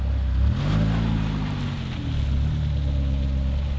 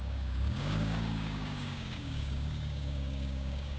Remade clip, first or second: second